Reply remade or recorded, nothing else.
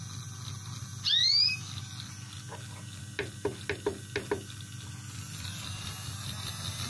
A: recorded